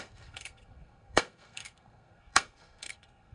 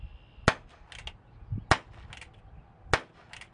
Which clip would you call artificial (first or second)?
first